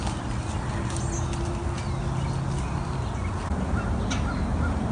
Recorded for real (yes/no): yes